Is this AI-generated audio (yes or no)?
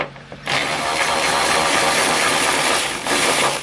yes